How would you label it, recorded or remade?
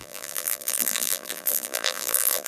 remade